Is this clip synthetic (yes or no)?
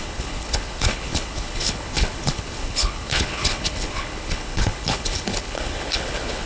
yes